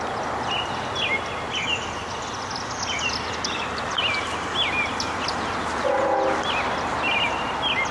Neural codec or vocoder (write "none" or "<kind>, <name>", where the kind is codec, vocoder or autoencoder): none